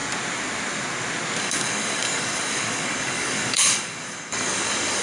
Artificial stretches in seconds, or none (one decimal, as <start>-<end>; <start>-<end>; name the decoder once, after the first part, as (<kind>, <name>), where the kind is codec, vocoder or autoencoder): 1.4-5.0 (codec, DAC)